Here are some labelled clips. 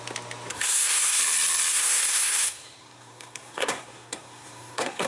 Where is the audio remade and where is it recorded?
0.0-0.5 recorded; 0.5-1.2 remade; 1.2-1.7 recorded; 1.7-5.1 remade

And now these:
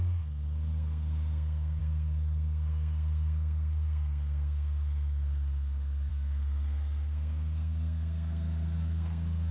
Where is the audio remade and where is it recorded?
0.0-9.5 remade